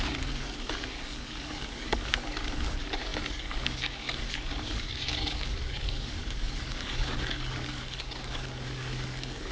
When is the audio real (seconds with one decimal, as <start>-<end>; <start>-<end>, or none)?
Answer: none